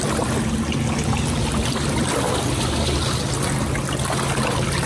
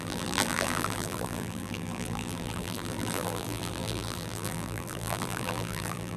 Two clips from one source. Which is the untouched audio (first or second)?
first